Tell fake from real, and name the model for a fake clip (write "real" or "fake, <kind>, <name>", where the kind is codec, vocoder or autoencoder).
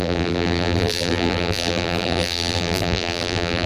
fake, vocoder, BigVGAN v2